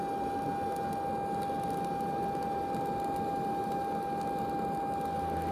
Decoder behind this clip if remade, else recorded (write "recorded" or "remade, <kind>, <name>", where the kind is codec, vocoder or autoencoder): recorded